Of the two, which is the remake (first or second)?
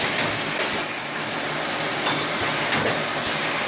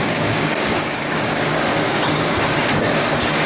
second